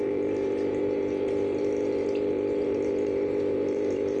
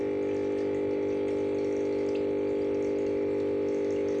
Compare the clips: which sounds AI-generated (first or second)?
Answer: first